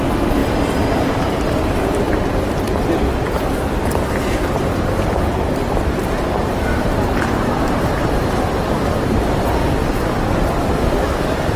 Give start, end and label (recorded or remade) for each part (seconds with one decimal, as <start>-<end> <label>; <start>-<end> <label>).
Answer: 0.0-11.6 remade